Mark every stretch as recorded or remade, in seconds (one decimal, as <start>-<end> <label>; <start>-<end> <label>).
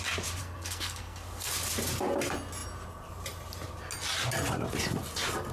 0.0-0.4 recorded; 0.4-1.5 remade; 1.5-5.5 recorded